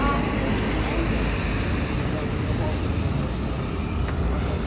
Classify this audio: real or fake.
real